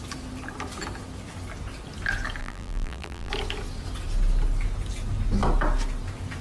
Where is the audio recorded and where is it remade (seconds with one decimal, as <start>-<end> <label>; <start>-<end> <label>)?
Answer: 0.0-2.4 recorded; 2.4-3.3 remade; 3.3-6.4 recorded